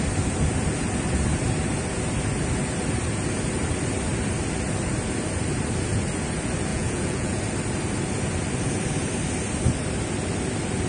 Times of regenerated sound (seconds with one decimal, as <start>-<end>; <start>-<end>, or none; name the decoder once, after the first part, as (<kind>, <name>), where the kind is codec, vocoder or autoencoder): 6.7-7.4 (vocoder, Vocos)